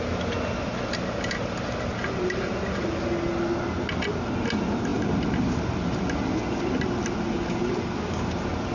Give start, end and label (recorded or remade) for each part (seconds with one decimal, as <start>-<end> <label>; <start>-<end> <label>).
0.0-8.7 recorded